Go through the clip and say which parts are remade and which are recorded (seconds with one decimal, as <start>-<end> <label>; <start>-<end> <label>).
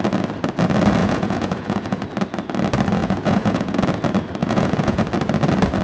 0.0-1.0 recorded; 1.0-2.0 remade; 2.0-3.0 recorded; 3.0-3.8 remade; 3.8-4.4 recorded; 4.4-5.0 remade; 5.0-5.8 recorded